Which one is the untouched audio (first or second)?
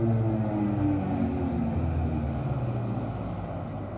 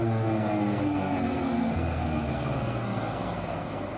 first